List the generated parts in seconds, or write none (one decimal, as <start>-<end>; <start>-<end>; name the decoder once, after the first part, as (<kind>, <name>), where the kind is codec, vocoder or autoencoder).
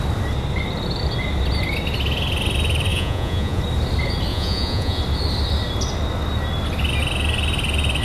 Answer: 2.9-3.6 (vocoder, Vocos); 4.3-5.0